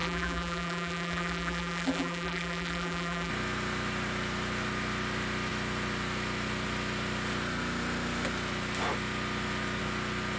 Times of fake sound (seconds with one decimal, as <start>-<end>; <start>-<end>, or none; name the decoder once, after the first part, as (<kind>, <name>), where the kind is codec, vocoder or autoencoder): 0.0-3.3 (vocoder, BigVGAN v2)